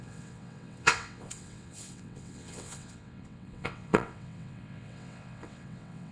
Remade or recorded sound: remade